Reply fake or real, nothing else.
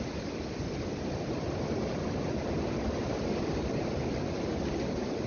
real